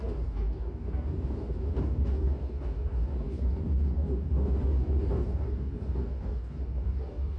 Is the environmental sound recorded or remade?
remade